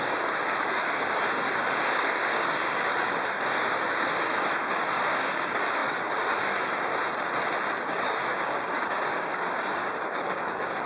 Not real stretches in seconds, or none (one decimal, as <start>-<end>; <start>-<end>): 0.0-6.9; 7.8-10.9